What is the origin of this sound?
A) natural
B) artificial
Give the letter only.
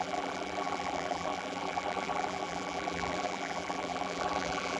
B